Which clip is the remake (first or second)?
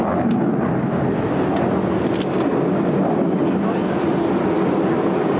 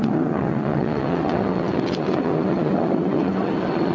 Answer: second